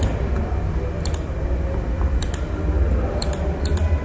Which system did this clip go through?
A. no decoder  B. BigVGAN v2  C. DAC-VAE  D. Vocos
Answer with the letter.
A